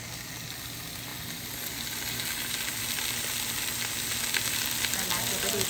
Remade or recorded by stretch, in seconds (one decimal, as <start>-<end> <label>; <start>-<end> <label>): 0.0-5.7 recorded